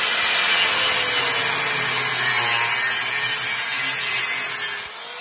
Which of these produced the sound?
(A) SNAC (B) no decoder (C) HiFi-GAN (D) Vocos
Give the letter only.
B